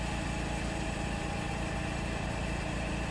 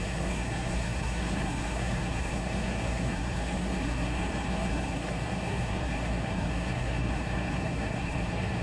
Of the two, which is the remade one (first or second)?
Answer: second